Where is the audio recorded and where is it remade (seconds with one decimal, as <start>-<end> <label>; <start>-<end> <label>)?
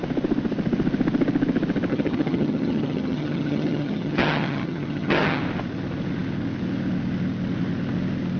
0.0-1.9 recorded; 1.9-5.4 remade; 5.4-8.4 recorded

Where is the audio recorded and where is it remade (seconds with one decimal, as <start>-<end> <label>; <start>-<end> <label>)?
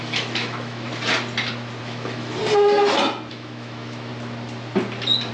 0.0-0.9 remade; 0.9-1.8 recorded; 1.8-2.4 remade; 2.4-3.3 recorded; 3.3-4.1 remade; 4.1-5.3 recorded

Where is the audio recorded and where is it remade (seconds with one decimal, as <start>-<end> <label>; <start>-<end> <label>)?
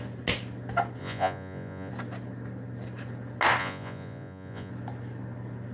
0.0-1.0 recorded; 1.0-1.9 remade; 1.9-3.6 recorded; 3.6-4.7 remade; 4.7-5.7 recorded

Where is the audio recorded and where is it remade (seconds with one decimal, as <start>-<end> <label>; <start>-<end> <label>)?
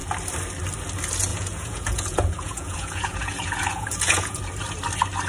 0.0-1.3 recorded; 1.3-4.4 remade; 4.4-5.3 recorded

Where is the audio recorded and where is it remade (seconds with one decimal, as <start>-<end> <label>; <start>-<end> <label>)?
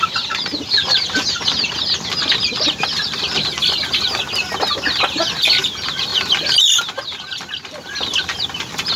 0.0-9.0 recorded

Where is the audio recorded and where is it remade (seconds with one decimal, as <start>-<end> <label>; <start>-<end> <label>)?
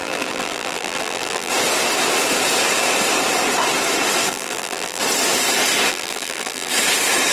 0.0-1.5 remade; 1.5-4.3 recorded; 4.3-5.0 remade; 5.0-5.9 recorded; 5.9-6.7 remade; 6.7-7.3 recorded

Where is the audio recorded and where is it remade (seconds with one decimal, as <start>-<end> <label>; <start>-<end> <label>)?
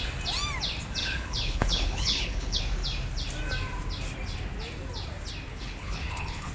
0.0-1.0 recorded; 1.0-2.6 remade; 2.6-5.5 recorded; 5.5-6.5 remade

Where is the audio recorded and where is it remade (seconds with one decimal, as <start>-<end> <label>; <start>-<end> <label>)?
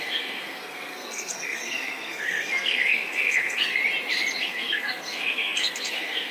0.0-3.8 remade; 3.8-4.4 recorded; 4.4-6.3 remade